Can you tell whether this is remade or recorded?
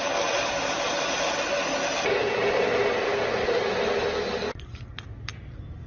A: recorded